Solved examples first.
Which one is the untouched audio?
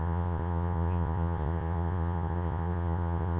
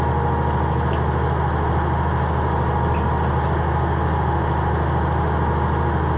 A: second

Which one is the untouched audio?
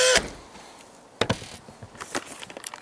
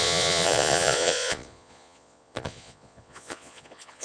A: first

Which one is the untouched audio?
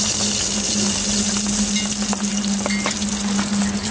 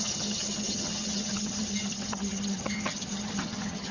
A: first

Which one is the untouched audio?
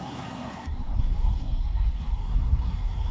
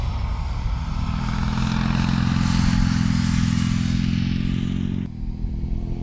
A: second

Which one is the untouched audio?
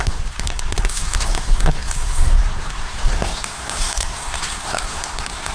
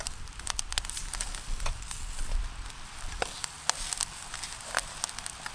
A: second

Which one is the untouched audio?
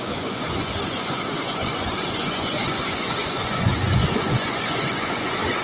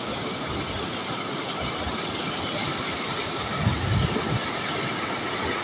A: second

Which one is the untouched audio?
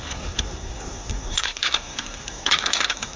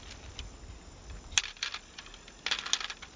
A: second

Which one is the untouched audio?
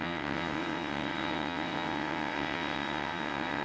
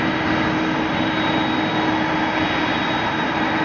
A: second